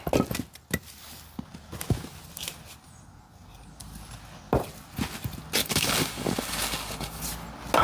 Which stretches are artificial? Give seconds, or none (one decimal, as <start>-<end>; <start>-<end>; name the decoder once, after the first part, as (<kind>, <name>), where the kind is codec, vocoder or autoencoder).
5.6-7.2 (codec, DAC)